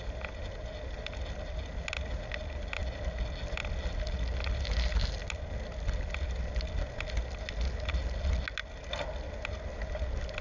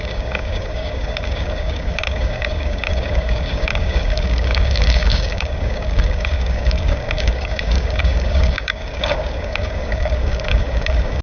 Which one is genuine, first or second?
first